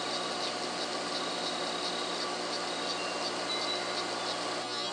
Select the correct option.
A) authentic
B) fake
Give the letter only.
A